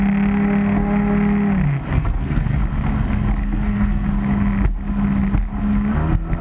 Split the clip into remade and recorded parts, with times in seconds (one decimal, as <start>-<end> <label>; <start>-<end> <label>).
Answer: 0.0-1.9 recorded; 1.9-2.6 remade; 2.6-3.4 recorded; 3.4-4.1 remade; 4.1-6.4 recorded